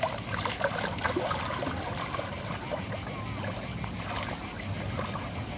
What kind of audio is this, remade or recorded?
recorded